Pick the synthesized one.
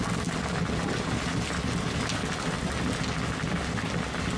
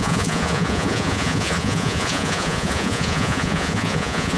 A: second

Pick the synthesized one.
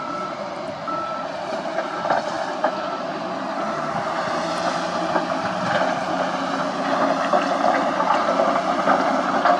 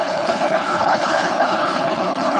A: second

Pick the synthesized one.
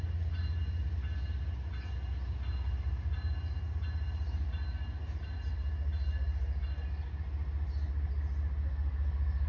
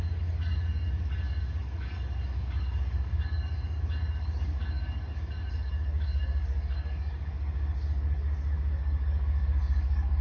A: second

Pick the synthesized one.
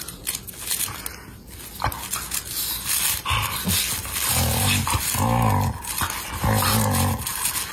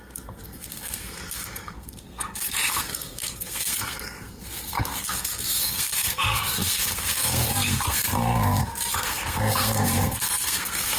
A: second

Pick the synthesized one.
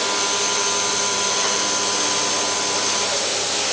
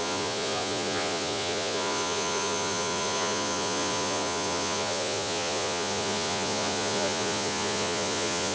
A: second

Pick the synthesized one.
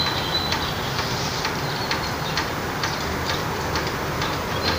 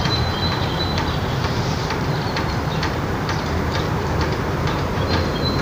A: second